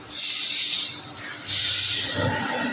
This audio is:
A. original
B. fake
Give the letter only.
A